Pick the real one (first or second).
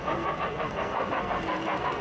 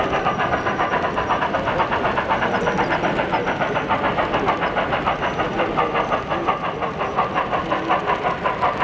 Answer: second